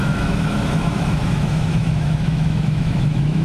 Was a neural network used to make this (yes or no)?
yes